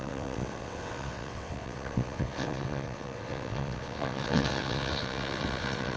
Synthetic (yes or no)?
yes